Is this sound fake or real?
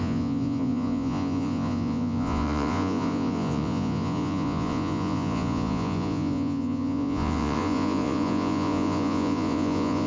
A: fake